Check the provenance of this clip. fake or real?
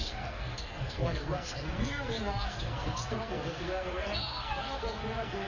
fake